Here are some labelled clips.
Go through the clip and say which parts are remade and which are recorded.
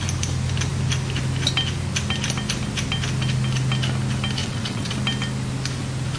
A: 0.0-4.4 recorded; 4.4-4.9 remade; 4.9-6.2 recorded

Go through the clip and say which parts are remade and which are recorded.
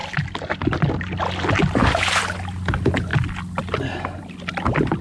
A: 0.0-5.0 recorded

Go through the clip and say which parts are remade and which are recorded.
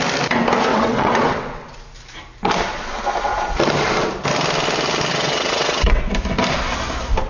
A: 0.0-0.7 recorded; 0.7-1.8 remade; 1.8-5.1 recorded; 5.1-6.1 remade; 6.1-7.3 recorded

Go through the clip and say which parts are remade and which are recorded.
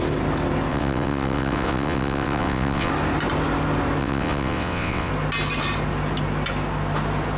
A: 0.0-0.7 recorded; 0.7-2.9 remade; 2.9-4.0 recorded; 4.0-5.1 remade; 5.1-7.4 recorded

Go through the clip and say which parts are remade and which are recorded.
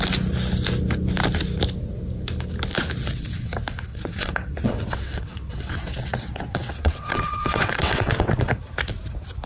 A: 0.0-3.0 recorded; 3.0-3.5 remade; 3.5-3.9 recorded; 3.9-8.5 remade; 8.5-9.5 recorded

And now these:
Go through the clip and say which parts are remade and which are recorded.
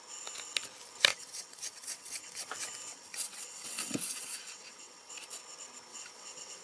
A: 0.0-1.1 recorded; 1.1-2.5 remade; 2.5-2.9 recorded; 2.9-5.1 remade; 5.1-5.9 recorded; 5.9-6.6 remade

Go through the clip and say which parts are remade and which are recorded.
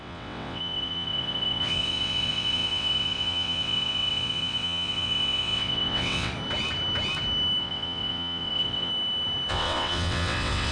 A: 0.0-6.3 remade; 6.3-7.6 recorded; 7.6-8.9 remade; 8.9-9.5 recorded; 9.5-10.7 remade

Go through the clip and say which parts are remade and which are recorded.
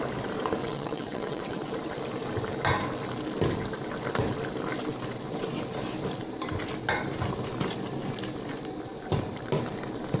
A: 0.0-0.6 recorded; 0.6-1.7 remade; 1.7-10.2 recorded